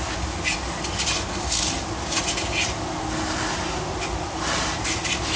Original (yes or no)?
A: yes